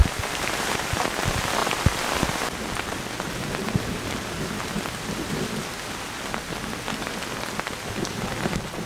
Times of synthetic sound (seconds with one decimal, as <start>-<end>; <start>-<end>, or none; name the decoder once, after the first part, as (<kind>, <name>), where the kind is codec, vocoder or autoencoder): none